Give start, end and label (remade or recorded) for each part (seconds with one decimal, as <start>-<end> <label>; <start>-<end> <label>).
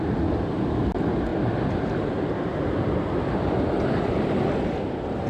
0.0-5.3 recorded